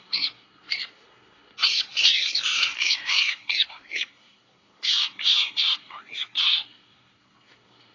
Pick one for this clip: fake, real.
fake